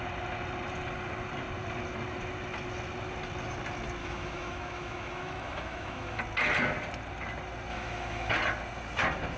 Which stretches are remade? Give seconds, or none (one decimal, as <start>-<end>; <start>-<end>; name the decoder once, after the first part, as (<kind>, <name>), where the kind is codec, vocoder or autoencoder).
4.0-6.2 (autoencoder, DAC-VAE); 7.7-8.3